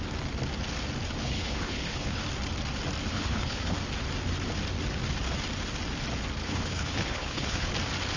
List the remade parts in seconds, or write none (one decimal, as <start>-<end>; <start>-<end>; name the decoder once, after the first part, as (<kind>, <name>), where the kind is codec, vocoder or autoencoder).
1.2-2.2 (codec, HILCodec); 3.1-3.8; 6.4-7.7